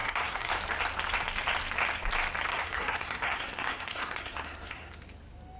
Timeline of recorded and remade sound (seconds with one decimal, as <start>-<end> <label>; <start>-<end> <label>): 0.0-0.5 remade; 0.5-2.5 recorded; 2.5-4.9 remade; 4.9-5.6 recorded